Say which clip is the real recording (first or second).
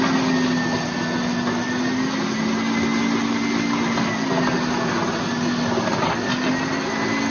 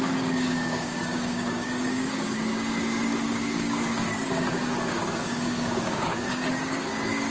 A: first